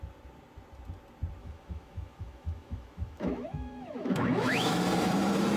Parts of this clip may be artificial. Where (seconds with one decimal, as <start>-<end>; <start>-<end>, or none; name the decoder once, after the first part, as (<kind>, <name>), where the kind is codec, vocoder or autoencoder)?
1.4-4.8 (autoencoder, DAC-VAE)

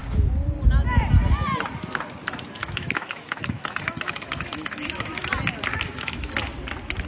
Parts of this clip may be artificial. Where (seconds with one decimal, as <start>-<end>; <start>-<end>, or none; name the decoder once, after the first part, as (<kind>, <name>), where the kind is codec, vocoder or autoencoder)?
2.6-5.3 (autoencoder, DAC-VAE); 5.7-6.3

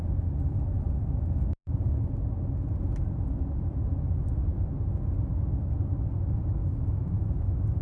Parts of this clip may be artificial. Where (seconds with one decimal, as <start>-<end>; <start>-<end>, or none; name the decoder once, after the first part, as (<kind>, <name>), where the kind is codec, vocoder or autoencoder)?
6.6-7.8 (autoencoder, DAC-VAE)